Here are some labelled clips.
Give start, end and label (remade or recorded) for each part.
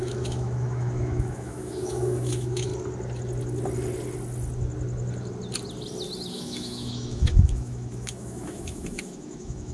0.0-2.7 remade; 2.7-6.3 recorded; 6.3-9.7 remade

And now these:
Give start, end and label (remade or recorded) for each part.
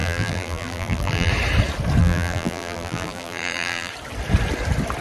0.0-1.3 remade; 1.3-2.0 recorded; 2.0-3.9 remade; 3.9-5.0 recorded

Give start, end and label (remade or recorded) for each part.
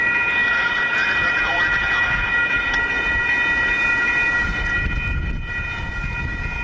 0.0-6.6 recorded